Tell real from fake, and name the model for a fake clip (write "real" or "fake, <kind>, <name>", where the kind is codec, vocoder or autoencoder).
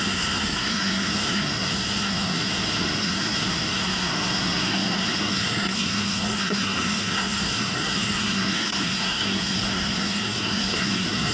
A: fake, codec, SNAC